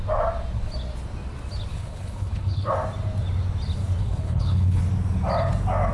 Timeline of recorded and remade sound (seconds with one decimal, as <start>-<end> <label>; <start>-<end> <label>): 0.0-1.7 recorded; 1.7-2.7 remade; 2.7-4.0 recorded; 4.0-4.8 remade; 4.8-5.9 recorded